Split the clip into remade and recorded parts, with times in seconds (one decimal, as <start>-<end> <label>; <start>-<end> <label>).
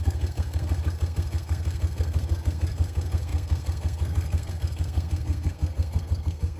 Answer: 0.0-6.6 remade